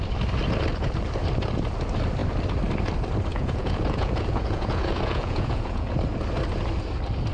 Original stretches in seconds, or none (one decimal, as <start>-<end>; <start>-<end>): 0.0-3.3; 5.9-7.3